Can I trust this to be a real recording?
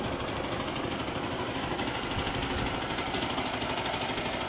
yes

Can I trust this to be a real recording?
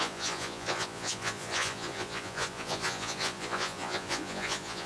no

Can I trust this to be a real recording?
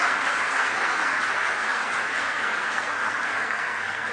no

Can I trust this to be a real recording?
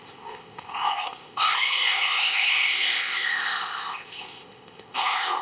no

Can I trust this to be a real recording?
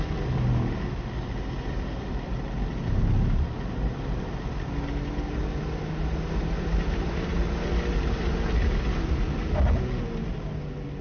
yes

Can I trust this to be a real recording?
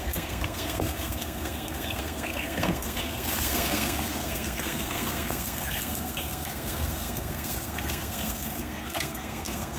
no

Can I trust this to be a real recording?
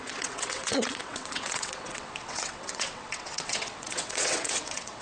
no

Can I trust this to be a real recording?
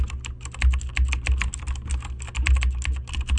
yes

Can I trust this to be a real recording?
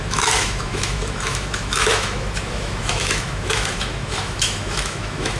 no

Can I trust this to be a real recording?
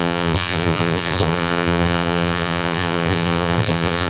no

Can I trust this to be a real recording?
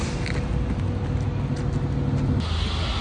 yes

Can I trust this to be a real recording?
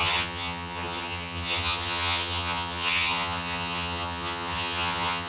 no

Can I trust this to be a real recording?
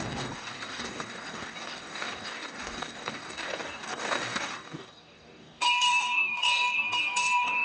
no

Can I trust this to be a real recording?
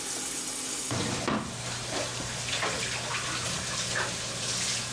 yes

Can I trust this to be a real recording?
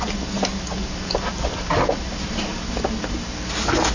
yes